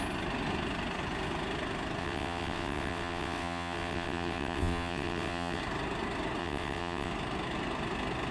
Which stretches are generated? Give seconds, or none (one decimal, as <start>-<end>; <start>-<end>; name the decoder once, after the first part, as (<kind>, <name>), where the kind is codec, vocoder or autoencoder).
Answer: 2.0-5.6 (vocoder, WaveNeXt); 6.4-7.1